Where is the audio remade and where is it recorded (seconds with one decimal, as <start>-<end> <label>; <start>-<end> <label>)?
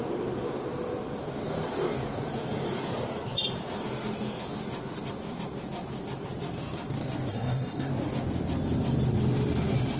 0.0-7.3 recorded; 7.3-7.9 remade; 7.9-10.0 recorded